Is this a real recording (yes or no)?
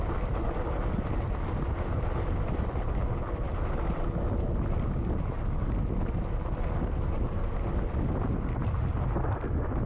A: yes